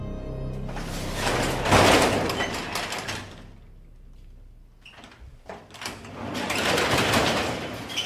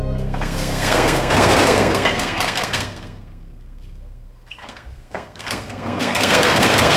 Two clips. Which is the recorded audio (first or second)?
first